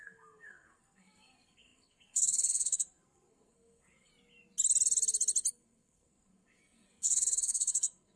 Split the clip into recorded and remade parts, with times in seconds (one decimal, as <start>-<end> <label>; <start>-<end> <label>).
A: 0.0-4.1 remade; 4.1-5.5 recorded; 5.5-8.2 remade